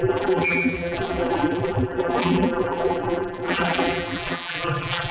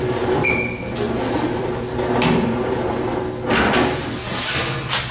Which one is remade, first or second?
first